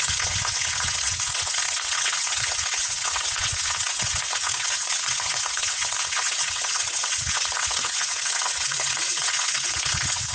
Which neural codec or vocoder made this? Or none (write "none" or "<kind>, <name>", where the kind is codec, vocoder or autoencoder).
vocoder, WaveNeXt